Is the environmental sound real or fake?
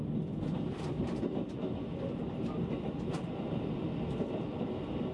fake